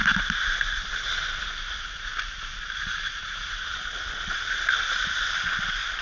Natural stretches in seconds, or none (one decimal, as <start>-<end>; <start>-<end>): 0.0-2.1; 3.1-6.0